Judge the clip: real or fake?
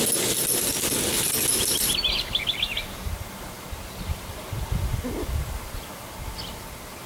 real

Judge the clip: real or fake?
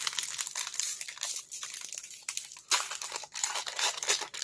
real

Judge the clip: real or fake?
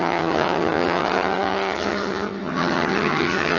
fake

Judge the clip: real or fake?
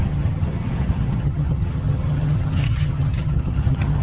fake